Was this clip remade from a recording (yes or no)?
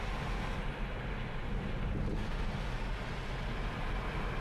no